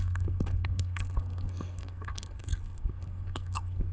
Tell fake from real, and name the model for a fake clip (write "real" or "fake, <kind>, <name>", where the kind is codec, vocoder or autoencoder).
fake, codec, SNAC